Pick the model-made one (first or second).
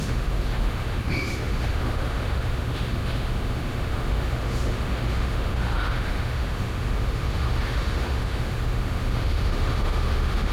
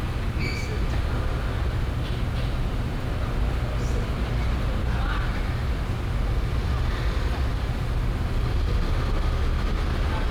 first